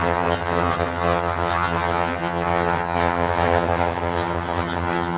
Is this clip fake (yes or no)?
yes